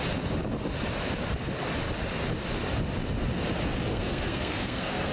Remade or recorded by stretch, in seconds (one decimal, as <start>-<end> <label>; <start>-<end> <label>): 0.0-3.9 recorded; 3.9-5.1 remade

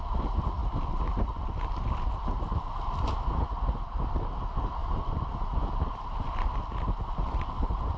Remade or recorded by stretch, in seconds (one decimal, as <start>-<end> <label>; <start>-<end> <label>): 0.0-8.0 recorded